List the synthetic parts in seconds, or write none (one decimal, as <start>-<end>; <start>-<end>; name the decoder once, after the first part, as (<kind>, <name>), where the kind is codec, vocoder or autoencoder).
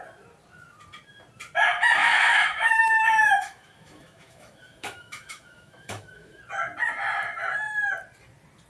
2.0-6.4 (autoencoder, DAC-VAE)